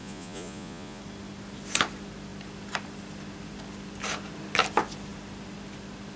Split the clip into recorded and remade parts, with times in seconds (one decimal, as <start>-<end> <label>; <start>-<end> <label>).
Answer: 0.0-1.0 remade; 1.0-6.2 recorded